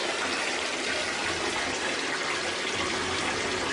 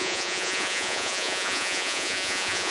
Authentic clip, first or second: first